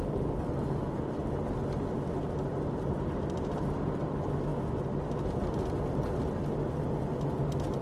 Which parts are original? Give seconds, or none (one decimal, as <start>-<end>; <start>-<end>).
0.0-7.8

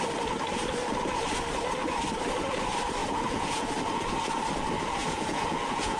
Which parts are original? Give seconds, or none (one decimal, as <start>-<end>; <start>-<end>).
0.0-3.0; 3.7-5.0

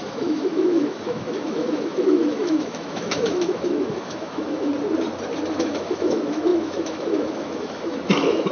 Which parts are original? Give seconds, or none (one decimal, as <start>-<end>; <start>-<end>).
4.7-5.5